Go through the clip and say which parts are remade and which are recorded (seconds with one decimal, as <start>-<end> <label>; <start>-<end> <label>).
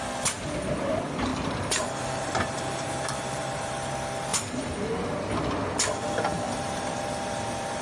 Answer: 0.0-1.3 recorded; 1.3-3.9 remade; 3.9-4.3 recorded; 4.3-4.9 remade; 4.9-6.3 recorded; 6.3-7.8 remade